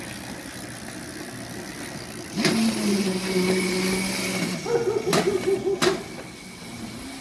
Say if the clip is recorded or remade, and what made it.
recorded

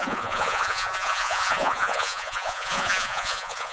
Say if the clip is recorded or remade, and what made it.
remade, vocoder, Vocos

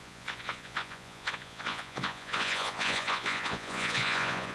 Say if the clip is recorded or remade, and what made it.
remade, vocoder, Vocos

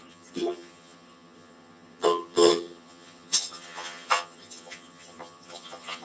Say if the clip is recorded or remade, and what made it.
remade, vocoder, HiFi-GAN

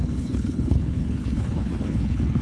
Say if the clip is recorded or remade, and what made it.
remade, codec, HILCodec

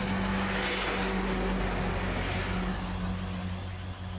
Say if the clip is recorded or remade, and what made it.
recorded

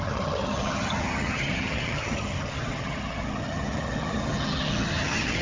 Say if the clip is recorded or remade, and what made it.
remade, vocoder, HiFi-GAN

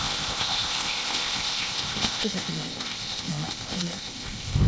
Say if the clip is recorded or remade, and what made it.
remade, codec, ZipCodec